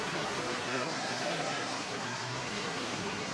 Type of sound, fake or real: fake